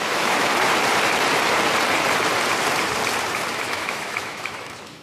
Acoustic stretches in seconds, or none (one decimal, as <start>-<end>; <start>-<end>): 0.5-3.5